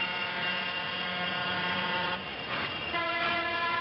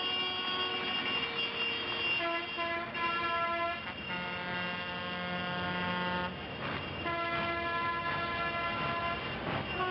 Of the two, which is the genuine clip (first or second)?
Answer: second